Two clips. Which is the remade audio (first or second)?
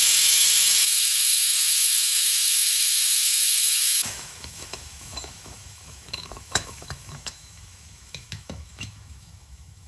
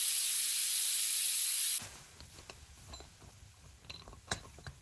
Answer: first